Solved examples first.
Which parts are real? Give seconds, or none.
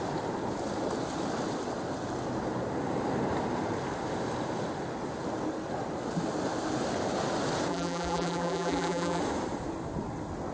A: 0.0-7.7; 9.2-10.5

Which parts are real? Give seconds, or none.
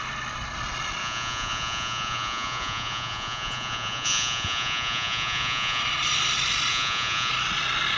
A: 0.0-1.0; 5.8-6.7; 7.3-8.0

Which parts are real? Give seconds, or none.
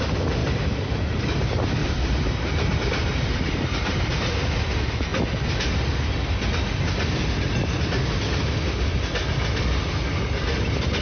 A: 0.0-0.4; 1.2-1.8; 4.6-11.0